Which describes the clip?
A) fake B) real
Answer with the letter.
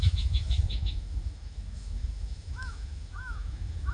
A